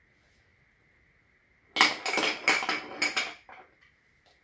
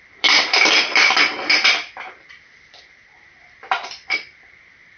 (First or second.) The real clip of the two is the first